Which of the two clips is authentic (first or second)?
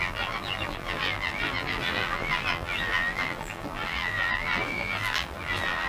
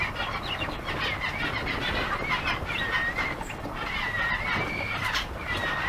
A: second